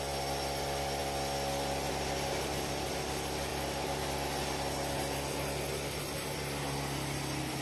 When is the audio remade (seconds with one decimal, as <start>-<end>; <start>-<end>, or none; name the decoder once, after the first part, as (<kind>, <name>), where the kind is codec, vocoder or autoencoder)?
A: none